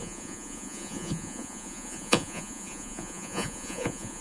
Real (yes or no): no